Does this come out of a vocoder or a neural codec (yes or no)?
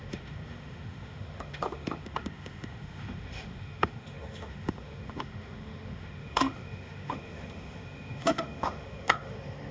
yes